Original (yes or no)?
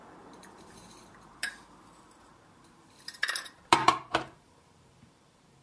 no